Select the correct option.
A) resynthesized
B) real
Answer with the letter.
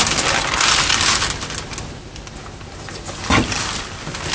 B